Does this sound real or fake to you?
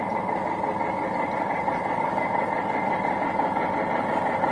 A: fake